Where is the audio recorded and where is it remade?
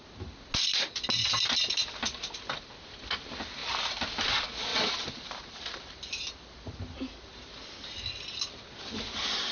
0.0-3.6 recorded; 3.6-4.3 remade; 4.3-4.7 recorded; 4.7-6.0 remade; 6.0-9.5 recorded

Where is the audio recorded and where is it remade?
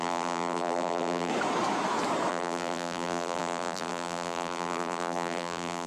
0.0-1.3 remade; 1.3-2.3 recorded; 2.3-5.9 remade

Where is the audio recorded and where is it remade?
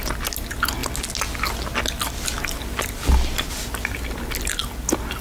0.0-5.2 recorded